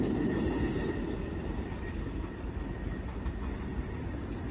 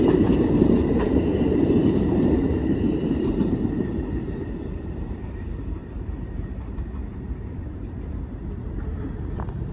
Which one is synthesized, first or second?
second